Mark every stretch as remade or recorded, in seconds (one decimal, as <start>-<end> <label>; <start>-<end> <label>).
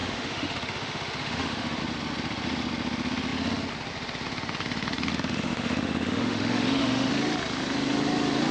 0.0-1.8 remade; 1.8-5.1 recorded; 5.1-7.1 remade; 7.1-8.5 recorded